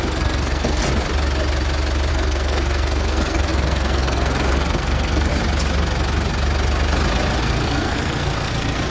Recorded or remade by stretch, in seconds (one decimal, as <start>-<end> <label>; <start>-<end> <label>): 0.0-0.8 remade; 0.8-2.1 recorded; 2.1-5.3 remade; 5.3-7.4 recorded; 7.4-8.9 remade